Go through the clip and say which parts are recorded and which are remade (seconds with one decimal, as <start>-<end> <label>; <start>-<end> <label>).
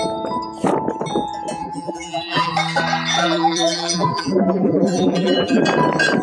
0.0-1.6 recorded; 1.6-2.5 remade; 2.5-3.2 recorded; 3.2-5.6 remade; 5.6-6.2 recorded